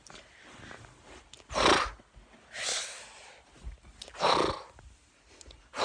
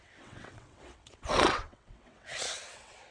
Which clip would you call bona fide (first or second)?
first